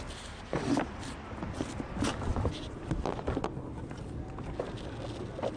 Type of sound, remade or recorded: recorded